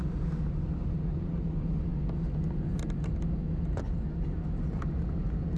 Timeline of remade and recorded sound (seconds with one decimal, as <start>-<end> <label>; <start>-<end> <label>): 0.0-0.8 recorded; 0.8-1.3 remade; 1.3-5.6 recorded